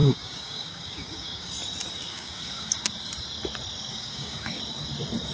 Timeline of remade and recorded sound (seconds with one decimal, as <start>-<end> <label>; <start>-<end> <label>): 0.0-1.5 remade; 1.5-2.1 recorded; 2.1-2.8 remade; 2.8-3.9 recorded; 3.9-4.6 remade; 4.6-5.3 recorded